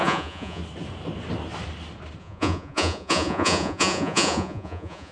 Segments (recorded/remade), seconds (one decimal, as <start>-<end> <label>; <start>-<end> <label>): 0.0-0.6 remade; 0.6-2.2 recorded; 2.2-5.1 remade